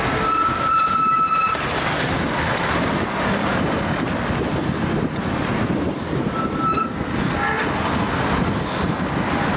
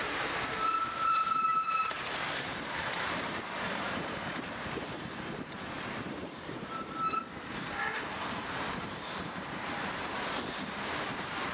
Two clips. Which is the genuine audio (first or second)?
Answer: first